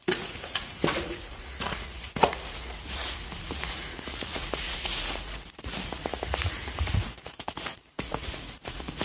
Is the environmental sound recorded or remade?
remade